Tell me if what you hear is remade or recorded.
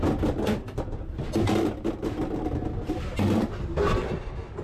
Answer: recorded